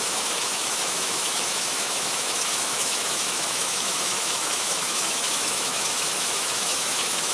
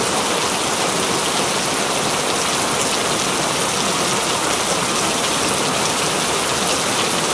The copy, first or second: first